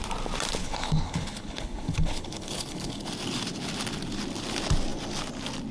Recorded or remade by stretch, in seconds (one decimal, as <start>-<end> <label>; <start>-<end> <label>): 0.0-0.6 recorded; 0.6-3.1 remade; 3.1-5.7 recorded